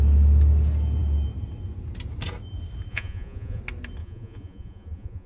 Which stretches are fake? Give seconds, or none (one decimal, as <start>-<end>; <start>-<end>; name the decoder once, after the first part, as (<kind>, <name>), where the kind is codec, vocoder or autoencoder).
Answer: 2.9-3.6 (vocoder, Vocos); 4.0-5.3